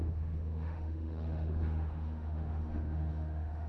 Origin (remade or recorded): remade